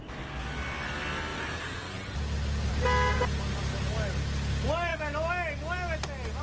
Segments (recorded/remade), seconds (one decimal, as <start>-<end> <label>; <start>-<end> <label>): 0.0-6.4 recorded